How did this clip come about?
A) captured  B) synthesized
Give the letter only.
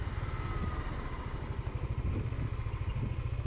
A